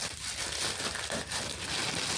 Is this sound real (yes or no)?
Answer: no